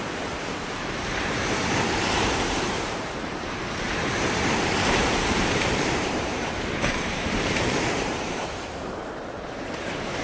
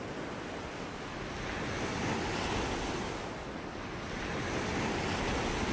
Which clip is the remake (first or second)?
first